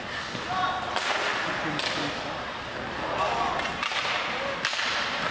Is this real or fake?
real